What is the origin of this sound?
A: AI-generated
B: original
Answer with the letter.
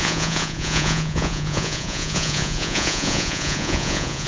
A